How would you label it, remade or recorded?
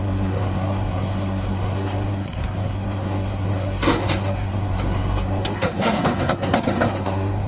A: remade